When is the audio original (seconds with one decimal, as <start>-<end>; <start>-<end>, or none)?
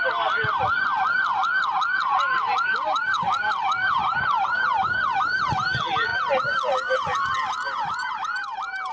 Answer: 0.0-8.9